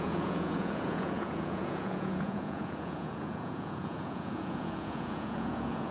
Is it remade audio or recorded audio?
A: remade